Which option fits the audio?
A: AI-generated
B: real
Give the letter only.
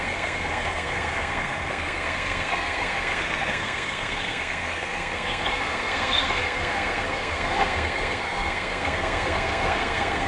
A